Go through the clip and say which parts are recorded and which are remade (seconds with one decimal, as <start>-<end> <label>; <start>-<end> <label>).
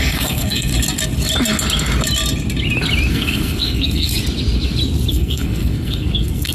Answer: 0.0-0.7 remade; 0.7-3.1 recorded; 3.1-4.1 remade; 4.1-5.1 recorded; 5.1-6.5 remade